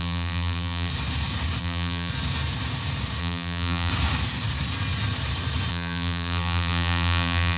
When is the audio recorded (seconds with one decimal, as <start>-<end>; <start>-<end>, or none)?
0.9-1.6; 2.1-3.2; 3.9-5.7